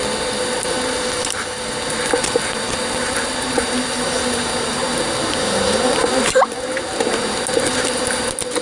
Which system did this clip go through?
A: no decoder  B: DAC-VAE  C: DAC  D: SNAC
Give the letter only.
A